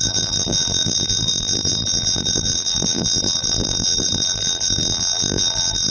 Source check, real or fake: fake